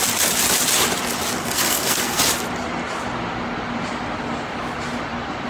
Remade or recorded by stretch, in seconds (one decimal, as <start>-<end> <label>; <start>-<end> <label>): 0.0-1.4 recorded; 1.4-2.2 remade; 2.2-5.5 recorded